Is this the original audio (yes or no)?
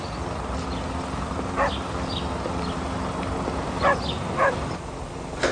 yes